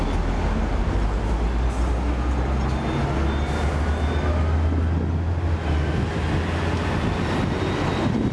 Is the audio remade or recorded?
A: recorded